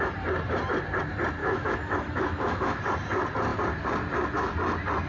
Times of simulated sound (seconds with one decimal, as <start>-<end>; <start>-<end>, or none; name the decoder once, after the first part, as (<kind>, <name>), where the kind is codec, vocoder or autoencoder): 1.4-2.8 (autoencoder, DAC-VAE)